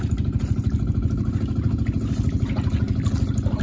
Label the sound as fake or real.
real